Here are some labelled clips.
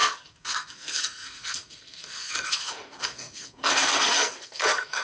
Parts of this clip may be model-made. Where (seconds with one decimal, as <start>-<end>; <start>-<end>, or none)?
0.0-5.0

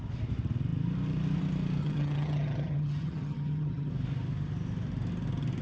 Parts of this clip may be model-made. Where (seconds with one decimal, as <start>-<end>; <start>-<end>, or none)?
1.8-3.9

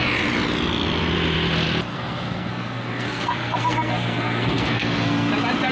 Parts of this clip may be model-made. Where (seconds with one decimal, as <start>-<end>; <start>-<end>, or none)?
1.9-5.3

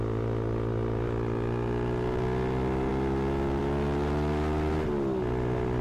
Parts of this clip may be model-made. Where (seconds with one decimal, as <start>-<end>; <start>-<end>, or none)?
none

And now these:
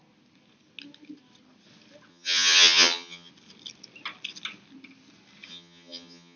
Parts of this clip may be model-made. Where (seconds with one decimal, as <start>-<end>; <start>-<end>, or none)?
2.1-3.3; 5.5-6.4

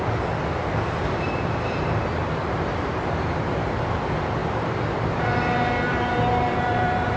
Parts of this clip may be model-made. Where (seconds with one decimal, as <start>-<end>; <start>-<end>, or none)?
0.6-3.8; 4.4-7.2

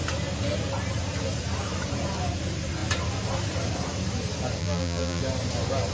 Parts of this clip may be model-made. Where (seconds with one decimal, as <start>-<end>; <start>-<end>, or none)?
4.6-5.2

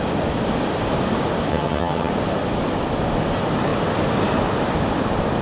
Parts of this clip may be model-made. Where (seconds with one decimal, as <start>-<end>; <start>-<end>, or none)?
1.5-2.1